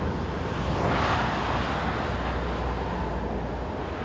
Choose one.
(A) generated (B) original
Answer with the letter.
B